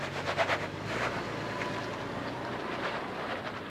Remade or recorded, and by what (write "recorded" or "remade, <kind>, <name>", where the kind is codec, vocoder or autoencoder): recorded